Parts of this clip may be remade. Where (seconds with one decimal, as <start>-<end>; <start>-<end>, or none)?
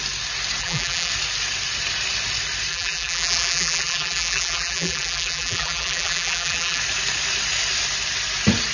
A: 0.6-1.1; 2.7-6.8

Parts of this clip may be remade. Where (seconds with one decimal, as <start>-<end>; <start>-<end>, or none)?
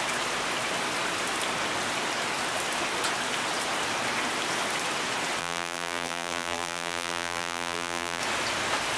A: 5.4-8.2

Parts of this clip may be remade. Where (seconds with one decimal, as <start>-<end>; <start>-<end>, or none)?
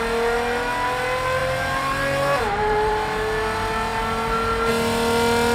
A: 1.4-2.9